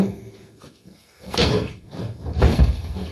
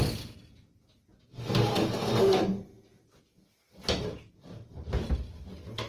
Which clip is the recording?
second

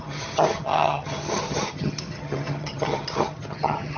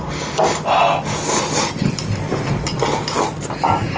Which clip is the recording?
second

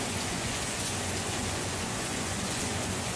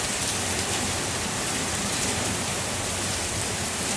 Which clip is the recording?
second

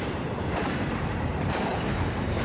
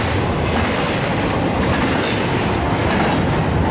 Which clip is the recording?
second